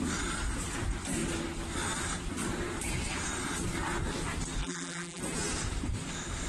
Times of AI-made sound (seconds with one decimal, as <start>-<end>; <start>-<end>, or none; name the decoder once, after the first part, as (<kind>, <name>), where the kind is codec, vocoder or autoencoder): 4.6-5.2 (vocoder, BigVGAN v2)